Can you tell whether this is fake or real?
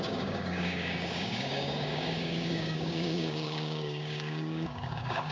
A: fake